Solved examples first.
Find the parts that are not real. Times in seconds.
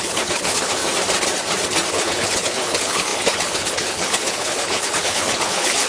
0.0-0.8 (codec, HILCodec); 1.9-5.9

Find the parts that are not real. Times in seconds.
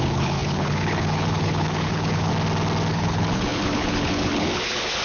0.0-2.3 (codec, HILCodec); 2.9-5.0